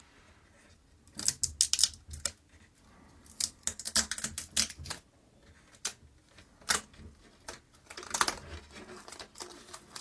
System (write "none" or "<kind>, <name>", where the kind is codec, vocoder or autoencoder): none